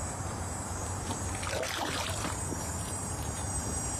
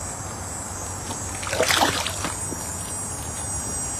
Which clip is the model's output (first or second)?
first